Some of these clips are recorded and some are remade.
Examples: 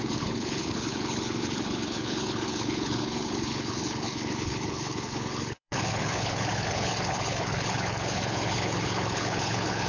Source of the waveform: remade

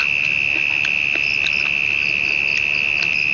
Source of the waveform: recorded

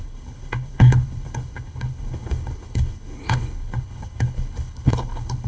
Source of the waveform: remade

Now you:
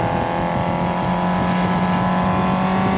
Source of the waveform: recorded